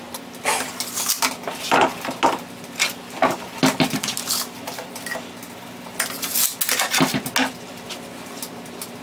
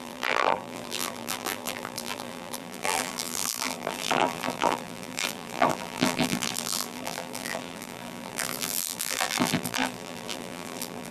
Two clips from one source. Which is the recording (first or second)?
first